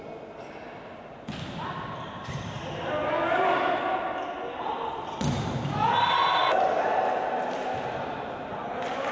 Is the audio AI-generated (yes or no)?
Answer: no